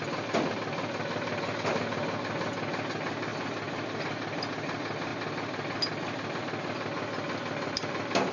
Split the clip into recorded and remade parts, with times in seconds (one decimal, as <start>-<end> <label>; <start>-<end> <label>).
0.0-8.3 recorded